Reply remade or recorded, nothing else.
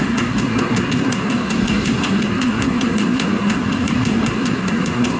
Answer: remade